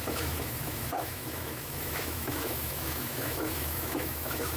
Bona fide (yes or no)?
no